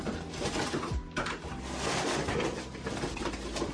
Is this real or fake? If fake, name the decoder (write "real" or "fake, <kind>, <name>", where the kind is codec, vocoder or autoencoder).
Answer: real